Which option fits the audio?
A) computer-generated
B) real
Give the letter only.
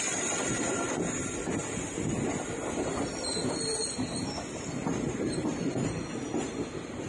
B